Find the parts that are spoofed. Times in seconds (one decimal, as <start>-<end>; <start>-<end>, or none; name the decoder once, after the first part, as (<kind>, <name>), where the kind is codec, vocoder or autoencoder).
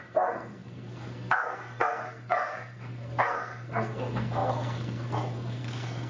0.0-6.1 (codec, SNAC)